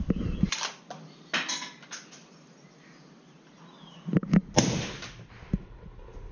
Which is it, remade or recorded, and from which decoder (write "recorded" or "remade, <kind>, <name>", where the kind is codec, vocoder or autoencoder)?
recorded